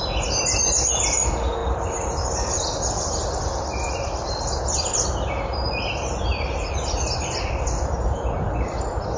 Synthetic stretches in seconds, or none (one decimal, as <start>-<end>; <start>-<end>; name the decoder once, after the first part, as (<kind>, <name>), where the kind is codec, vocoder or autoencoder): 1.6-3.4 (vocoder, BigVGAN v2); 3.8-4.4; 6.3-8.7